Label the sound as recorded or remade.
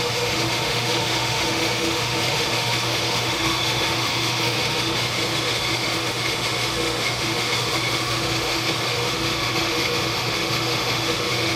remade